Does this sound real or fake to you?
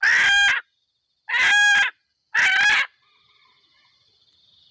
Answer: real